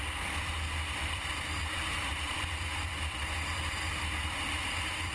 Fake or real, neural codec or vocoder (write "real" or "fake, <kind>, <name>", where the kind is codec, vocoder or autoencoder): fake, vocoder, BigVGAN v2